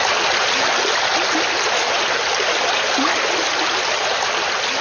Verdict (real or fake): real